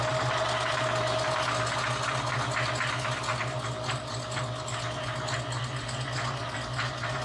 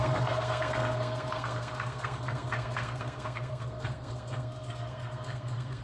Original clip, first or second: first